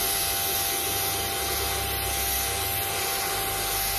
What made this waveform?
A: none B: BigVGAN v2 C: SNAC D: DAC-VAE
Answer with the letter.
A